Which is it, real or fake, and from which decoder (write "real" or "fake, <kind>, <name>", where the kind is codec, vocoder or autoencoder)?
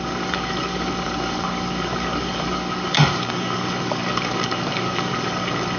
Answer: fake, codec, DAC